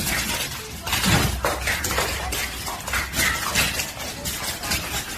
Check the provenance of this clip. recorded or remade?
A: recorded